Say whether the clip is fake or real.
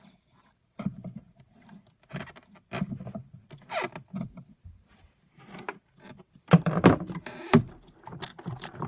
fake